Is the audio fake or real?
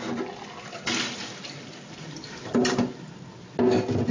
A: real